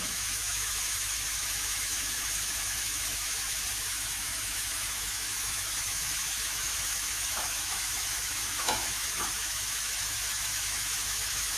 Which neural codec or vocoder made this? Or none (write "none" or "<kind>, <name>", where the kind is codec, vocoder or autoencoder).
autoencoder, DAC-VAE